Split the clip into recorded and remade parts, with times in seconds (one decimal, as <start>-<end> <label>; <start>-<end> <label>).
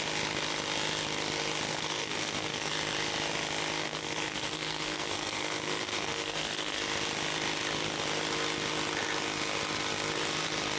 0.0-1.7 recorded; 1.7-2.7 remade; 2.7-3.8 recorded; 3.8-6.8 remade; 6.8-10.8 recorded